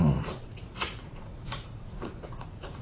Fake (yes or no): yes